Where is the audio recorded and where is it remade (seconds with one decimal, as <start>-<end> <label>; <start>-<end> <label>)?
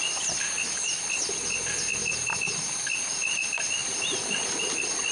0.0-2.0 recorded; 2.0-3.0 remade; 3.0-3.8 recorded; 3.8-4.6 remade; 4.6-5.1 recorded